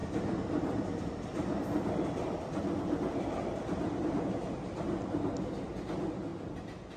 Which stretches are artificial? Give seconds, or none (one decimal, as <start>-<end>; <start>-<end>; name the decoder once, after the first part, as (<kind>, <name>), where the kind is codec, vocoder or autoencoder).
0.0-4.2 (vocoder, BigVGAN v2)